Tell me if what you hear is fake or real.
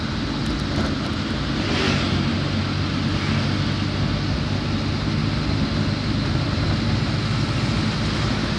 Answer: real